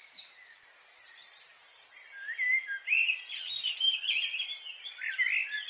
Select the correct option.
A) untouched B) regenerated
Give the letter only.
A